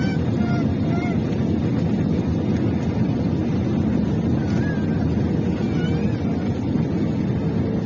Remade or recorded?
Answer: recorded